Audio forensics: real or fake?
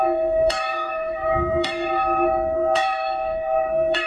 fake